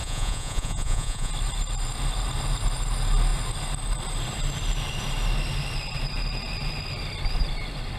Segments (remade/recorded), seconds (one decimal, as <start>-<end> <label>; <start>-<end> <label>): 0.0-1.3 remade; 1.3-8.0 recorded

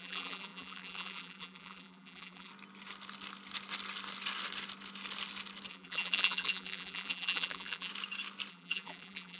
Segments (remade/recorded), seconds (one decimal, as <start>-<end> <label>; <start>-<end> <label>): 0.0-2.5 remade; 2.5-5.7 recorded; 5.7-7.9 remade; 7.9-8.5 recorded; 8.5-9.4 remade

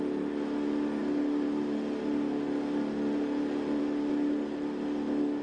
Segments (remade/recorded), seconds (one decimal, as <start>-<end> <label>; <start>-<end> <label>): 0.0-5.4 recorded

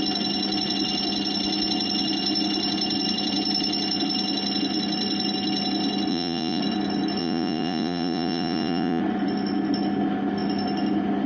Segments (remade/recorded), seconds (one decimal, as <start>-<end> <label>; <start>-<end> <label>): 0.0-6.1 recorded; 6.1-6.6 remade; 6.6-7.2 recorded; 7.2-9.0 remade; 9.0-11.3 recorded

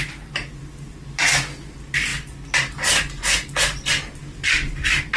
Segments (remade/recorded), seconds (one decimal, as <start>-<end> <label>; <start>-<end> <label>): 0.0-5.2 recorded